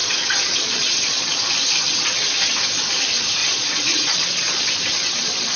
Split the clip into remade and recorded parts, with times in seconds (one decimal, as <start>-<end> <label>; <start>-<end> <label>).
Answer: 0.0-1.5 remade; 1.5-3.4 recorded; 3.4-5.6 remade